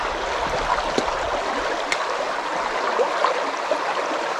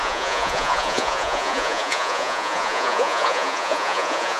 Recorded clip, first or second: first